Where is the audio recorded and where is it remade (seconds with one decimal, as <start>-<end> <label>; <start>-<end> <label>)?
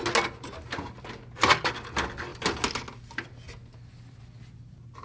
0.0-5.0 recorded